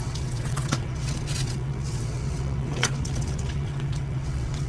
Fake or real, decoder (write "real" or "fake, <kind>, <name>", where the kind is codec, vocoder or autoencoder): fake, vocoder, WaveNeXt